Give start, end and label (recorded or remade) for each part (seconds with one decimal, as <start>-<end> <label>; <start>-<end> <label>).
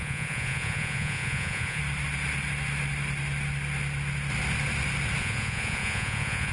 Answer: 0.0-1.8 remade; 1.8-5.2 recorded; 5.2-6.5 remade